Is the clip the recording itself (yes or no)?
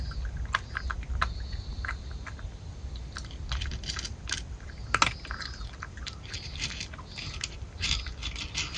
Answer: yes